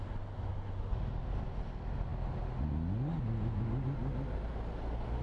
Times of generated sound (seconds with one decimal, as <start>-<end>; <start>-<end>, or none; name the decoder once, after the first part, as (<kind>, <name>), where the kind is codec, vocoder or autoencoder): none